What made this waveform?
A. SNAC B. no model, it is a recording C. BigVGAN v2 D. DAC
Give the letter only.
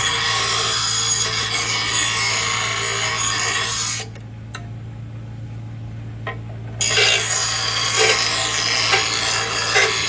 B